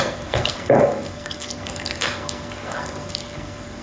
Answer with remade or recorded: remade